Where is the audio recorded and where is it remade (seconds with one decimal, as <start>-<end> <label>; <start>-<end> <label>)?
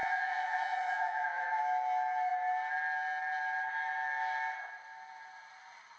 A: 0.0-1.6 remade; 1.6-6.0 recorded